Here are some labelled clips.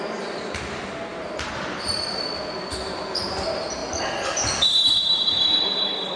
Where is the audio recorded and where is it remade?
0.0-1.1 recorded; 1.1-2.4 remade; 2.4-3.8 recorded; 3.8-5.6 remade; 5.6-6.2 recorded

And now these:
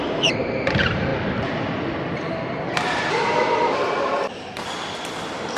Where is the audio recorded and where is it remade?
0.0-1.1 recorded; 1.1-4.5 remade; 4.5-5.6 recorded